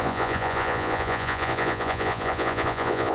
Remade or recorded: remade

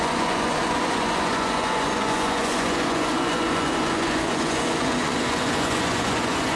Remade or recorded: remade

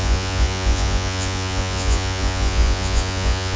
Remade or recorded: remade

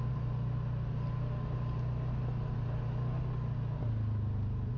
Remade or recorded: recorded